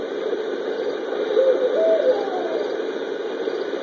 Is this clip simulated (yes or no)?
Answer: no